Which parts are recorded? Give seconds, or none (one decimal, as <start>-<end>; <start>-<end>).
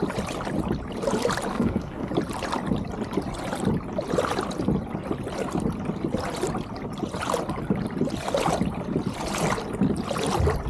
0.0-1.5; 2.1-10.7